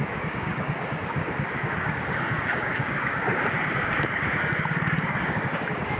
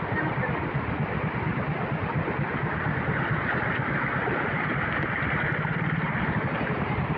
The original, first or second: second